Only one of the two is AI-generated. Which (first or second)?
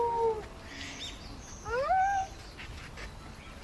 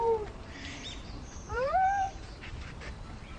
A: second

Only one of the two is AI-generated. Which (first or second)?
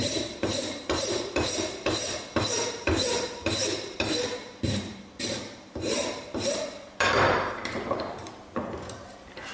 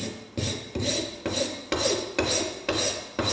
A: first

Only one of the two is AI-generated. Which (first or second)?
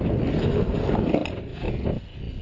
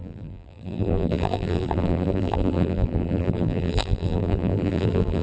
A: second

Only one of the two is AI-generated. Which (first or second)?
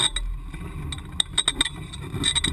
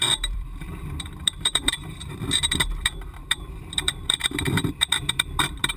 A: second